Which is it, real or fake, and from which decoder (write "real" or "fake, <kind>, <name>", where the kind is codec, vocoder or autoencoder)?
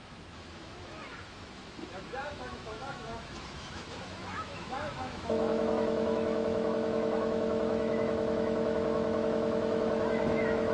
fake, autoencoder, DAC-VAE